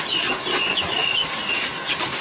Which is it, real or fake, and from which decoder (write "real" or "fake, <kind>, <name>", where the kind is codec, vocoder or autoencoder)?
real